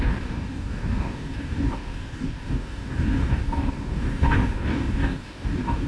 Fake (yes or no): yes